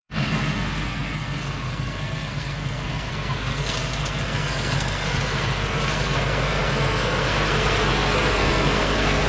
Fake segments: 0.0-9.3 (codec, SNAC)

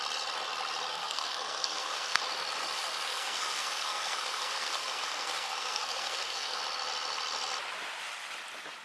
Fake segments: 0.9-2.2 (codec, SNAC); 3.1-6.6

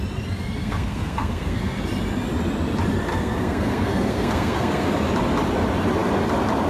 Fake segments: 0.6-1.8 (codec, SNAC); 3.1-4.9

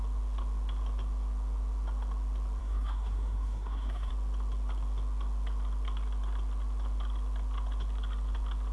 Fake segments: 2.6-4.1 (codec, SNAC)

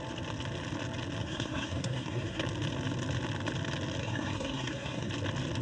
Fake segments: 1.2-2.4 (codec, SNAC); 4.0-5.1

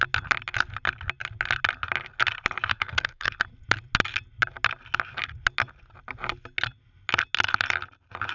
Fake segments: 2.7-3.3 (codec, SNAC)

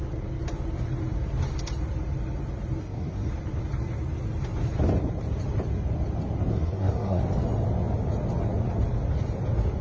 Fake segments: 2.8-3.3 (codec, SNAC); 6.5-7.2